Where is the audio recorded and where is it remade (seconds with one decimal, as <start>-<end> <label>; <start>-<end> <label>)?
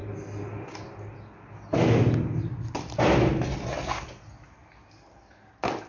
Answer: 0.0-5.9 recorded